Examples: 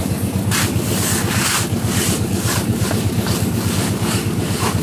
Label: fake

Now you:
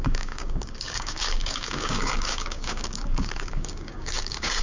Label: fake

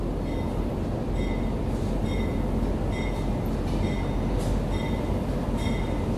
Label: real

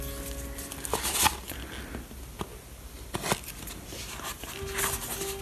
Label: real